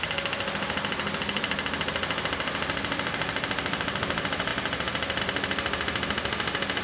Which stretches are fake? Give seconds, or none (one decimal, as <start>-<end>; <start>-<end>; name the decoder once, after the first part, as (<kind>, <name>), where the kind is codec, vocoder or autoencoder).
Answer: none